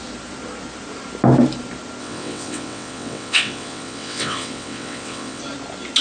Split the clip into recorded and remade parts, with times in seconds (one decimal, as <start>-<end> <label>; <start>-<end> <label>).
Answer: 0.0-2.0 recorded; 2.0-5.4 remade; 5.4-6.0 recorded